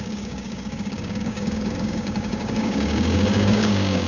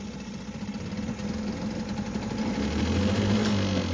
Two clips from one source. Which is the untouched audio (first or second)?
second